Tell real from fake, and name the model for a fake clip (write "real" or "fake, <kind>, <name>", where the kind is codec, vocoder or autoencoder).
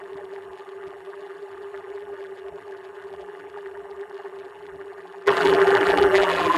fake, vocoder, BigVGAN v2